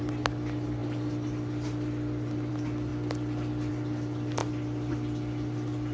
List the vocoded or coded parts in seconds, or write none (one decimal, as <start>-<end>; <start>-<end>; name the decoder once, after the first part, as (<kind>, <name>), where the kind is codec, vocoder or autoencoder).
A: none